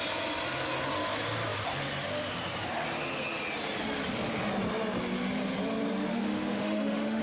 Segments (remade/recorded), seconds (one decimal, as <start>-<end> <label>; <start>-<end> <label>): 0.0-6.1 recorded; 6.1-7.2 remade